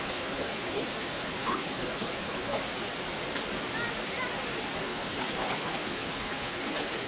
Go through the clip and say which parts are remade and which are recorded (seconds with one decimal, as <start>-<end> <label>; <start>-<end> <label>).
0.0-2.6 remade; 2.6-4.8 recorded; 4.8-7.1 remade